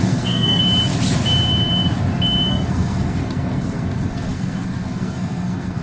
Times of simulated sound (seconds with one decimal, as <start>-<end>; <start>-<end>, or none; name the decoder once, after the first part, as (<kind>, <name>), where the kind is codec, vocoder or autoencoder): 0.0-0.6 (codec, SNAC); 2.5-5.8